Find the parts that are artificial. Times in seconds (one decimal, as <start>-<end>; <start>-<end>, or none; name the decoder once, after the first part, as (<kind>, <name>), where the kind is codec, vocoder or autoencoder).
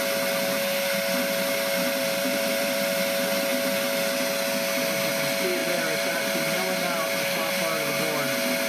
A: 2.0-2.9 (vocoder, BigVGAN v2); 5.6-6.2